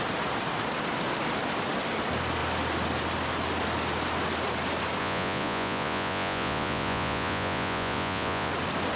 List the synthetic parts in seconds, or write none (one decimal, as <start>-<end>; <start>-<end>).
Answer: 5.0-8.5